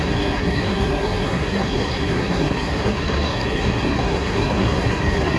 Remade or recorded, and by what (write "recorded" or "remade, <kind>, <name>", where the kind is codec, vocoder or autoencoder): remade, codec, SNAC